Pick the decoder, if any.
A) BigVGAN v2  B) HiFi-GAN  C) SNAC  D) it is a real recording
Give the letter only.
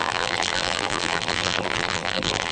A